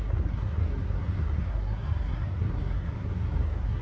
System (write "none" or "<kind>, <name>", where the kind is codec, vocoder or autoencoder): codec, SNAC